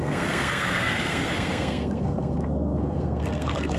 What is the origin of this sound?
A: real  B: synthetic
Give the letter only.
B